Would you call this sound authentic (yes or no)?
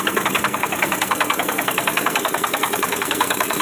no